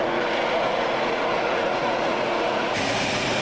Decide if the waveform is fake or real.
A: fake